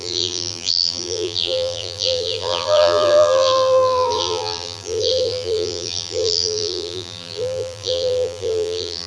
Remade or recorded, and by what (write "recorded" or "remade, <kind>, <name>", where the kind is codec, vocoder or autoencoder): remade, vocoder, BigVGAN v2